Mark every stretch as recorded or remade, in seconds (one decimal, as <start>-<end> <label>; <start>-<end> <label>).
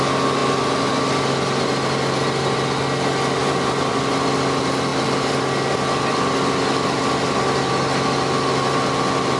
0.0-3.4 recorded; 3.4-4.0 remade; 4.0-9.4 recorded